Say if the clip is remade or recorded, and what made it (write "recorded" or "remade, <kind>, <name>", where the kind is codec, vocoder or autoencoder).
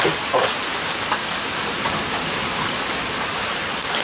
recorded